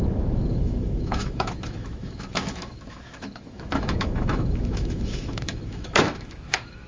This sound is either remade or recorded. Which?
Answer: remade